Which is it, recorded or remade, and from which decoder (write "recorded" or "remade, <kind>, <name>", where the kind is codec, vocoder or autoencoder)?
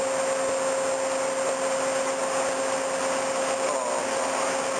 recorded